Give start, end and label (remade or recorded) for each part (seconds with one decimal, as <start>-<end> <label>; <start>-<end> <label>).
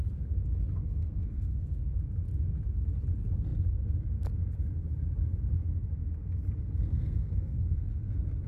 0.0-0.8 recorded; 0.8-1.8 remade; 1.8-6.9 recorded; 6.9-8.1 remade; 8.1-8.5 recorded